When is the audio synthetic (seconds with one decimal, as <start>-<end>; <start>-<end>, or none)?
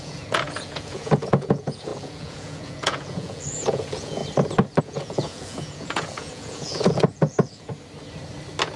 0.0-4.2; 4.8-7.7